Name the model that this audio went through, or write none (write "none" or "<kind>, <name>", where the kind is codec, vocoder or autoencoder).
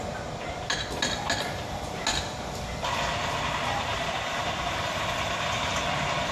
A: none